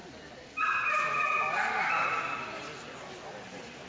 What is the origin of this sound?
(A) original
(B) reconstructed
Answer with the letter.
A